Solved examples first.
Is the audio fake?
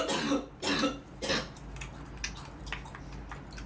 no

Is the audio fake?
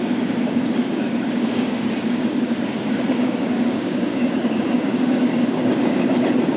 yes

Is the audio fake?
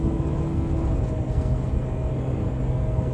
yes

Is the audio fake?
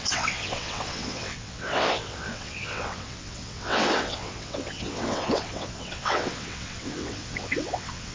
yes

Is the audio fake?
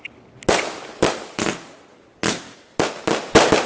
no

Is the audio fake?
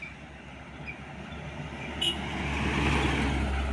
no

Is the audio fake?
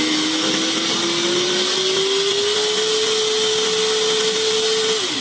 no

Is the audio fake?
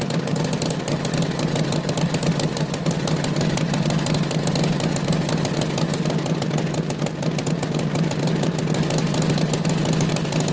no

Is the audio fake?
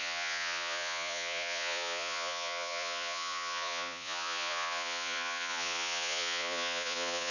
yes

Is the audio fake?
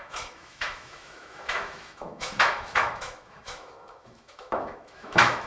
yes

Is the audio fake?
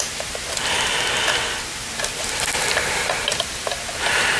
no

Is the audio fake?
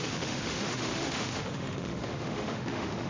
yes